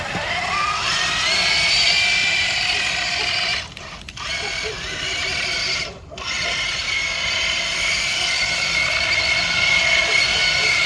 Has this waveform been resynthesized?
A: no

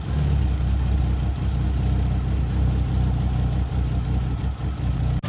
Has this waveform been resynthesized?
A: no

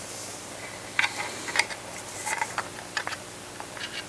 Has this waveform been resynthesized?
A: no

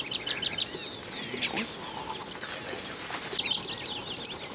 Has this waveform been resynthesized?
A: no